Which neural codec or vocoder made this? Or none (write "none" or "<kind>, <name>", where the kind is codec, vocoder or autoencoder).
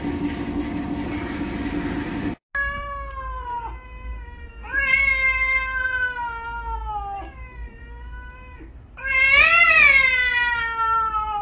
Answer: none